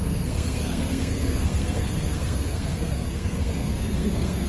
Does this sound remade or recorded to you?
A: remade